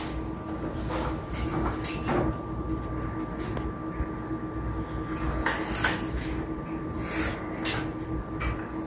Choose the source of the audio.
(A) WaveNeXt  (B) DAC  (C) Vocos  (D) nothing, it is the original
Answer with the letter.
D